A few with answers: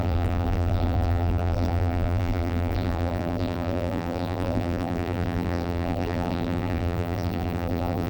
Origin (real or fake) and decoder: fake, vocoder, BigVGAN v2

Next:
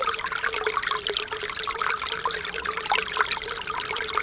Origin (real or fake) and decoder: real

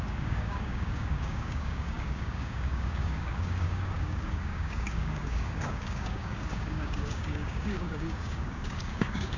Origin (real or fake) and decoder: fake, codec, DAC